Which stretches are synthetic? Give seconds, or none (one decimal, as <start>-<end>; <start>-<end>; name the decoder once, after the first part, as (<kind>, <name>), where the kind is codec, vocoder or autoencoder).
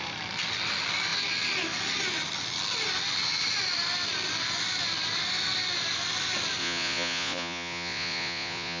6.6-8.8 (vocoder, Vocos)